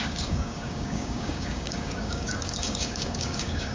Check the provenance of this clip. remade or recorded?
remade